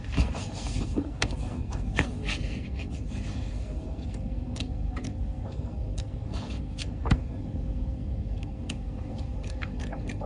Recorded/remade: remade